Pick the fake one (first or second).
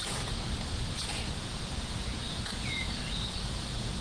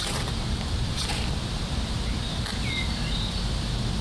first